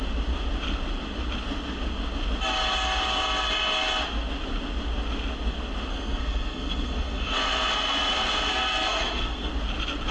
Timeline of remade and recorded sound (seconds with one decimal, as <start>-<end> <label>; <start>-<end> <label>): 0.0-5.9 recorded; 5.9-9.5 remade; 9.5-10.1 recorded